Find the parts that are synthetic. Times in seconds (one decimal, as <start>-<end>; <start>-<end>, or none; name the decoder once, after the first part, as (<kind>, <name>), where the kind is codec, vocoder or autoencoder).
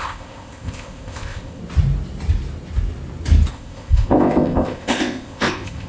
0.0-1.6 (codec, ZipCodec); 3.5-5.9